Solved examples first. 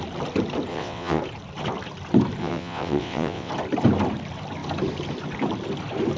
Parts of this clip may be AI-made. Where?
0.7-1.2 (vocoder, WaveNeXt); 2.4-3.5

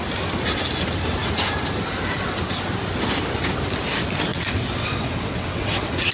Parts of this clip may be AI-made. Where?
4.3-6.1 (vocoder, WaveNeXt)

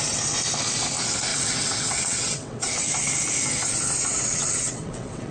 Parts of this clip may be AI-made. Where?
1.3-2.8 (vocoder, WaveNeXt); 4.1-5.3

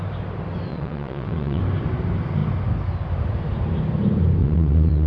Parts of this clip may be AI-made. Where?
0.7-1.6 (vocoder, WaveNeXt); 4.4-5.1

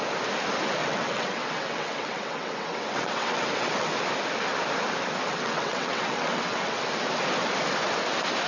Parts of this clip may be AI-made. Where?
0.8-3.9 (vocoder, WaveNeXt); 5.3-6.8

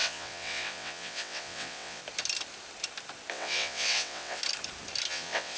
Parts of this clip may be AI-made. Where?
0.0-2.0 (vocoder, WaveNeXt); 3.3-4.4; 5.1-5.6

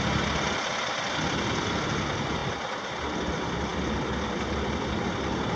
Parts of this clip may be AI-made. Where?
none

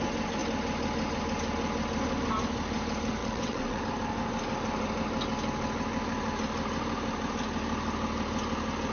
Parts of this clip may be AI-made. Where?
3.2-3.8 (vocoder, WaveNeXt)